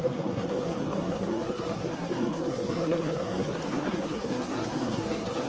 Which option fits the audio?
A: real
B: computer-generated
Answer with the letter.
B